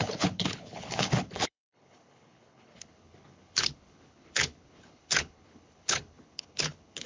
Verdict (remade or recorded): remade